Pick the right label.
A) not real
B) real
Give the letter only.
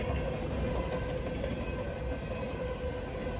B